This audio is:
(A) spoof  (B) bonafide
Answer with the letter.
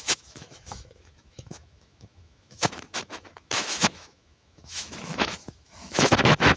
A